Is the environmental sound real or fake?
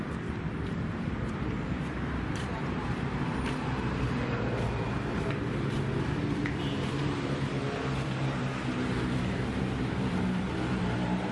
fake